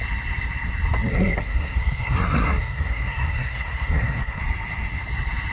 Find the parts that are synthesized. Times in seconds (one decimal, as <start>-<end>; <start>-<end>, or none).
1.1-4.4